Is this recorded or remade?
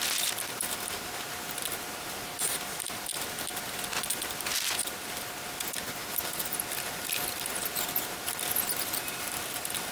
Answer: recorded